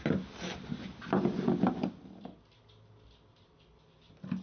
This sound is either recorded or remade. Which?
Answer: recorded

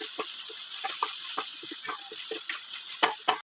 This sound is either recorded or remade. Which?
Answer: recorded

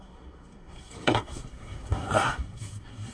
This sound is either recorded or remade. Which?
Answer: remade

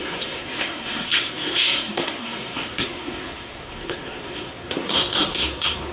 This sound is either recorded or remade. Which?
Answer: remade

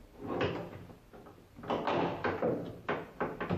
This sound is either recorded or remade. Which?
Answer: recorded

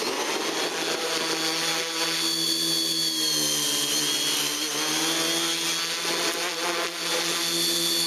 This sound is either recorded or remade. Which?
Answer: recorded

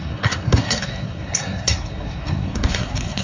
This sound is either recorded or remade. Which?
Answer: remade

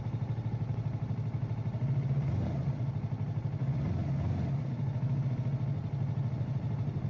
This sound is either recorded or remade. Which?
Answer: recorded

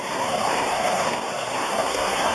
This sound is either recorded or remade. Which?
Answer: remade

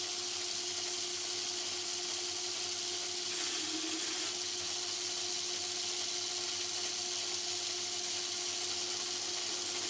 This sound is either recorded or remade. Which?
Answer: recorded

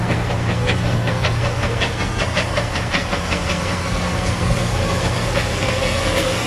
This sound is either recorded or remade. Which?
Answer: remade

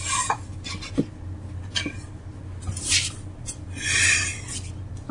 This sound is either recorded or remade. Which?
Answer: recorded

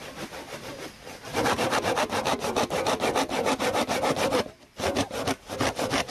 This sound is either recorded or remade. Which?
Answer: recorded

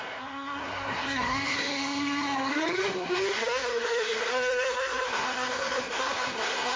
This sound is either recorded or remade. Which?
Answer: remade